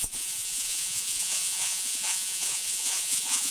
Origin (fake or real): fake